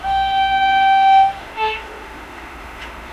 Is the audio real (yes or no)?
no